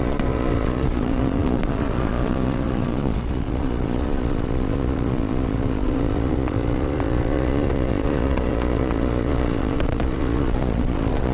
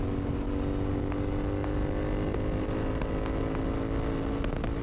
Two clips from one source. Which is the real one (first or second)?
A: second